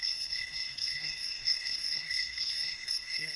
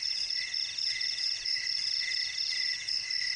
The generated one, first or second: first